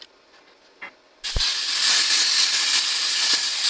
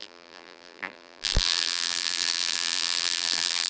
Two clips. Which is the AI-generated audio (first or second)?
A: second